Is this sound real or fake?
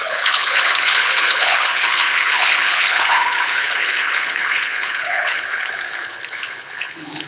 fake